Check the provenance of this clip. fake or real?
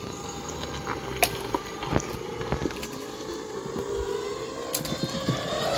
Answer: real